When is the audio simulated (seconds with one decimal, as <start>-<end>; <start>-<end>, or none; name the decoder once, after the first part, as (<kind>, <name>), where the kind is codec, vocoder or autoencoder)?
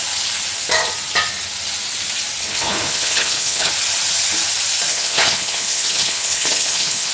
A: 2.4-3.7 (codec, HILCodec); 4.9-7.1